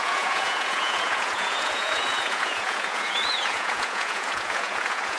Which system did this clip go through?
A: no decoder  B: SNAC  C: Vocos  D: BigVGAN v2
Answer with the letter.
C